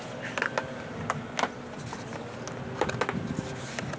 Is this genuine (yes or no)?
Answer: yes